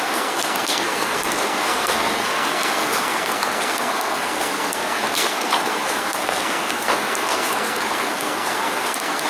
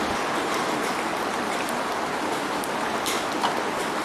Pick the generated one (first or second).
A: first